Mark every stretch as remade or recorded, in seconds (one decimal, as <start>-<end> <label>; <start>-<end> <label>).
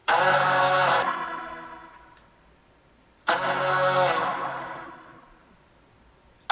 0.0-1.0 remade; 1.0-4.3 recorded; 4.3-5.6 remade; 5.6-6.5 recorded